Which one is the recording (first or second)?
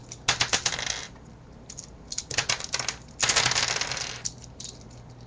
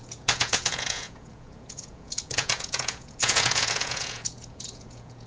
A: first